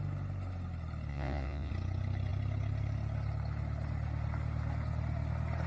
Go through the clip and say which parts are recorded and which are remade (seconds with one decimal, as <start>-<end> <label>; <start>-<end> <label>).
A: 0.0-1.1 recorded; 1.1-1.7 remade; 1.7-5.7 recorded